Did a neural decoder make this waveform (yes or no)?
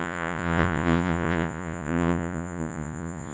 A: yes